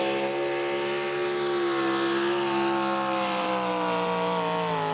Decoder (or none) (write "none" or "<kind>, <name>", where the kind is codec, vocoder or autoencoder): none